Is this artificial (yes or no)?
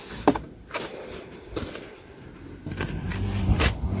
no